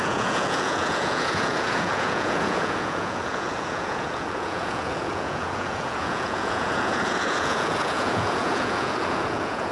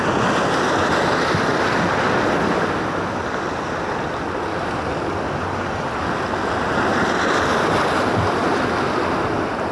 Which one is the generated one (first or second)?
first